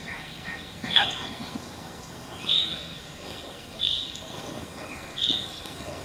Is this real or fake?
fake